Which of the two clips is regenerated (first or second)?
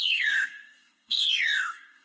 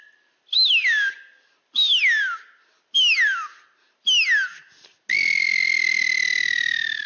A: first